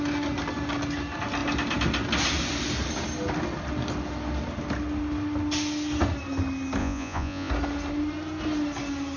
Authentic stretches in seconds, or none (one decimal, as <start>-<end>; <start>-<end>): 0.0-6.8; 7.5-9.2